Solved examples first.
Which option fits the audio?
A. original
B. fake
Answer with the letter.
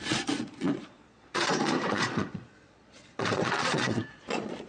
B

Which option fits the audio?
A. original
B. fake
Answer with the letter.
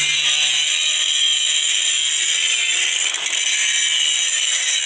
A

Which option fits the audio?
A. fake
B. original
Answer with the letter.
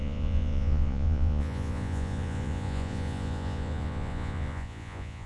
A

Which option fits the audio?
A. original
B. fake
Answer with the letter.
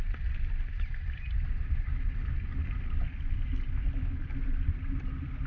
A